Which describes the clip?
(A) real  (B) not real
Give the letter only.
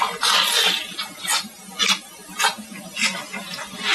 A